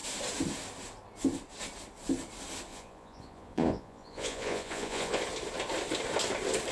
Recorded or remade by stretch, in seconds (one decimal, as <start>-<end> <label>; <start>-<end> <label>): 0.0-2.7 recorded; 2.7-5.2 remade; 5.2-6.7 recorded